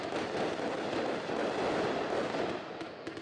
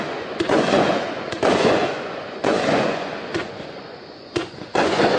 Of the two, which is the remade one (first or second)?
second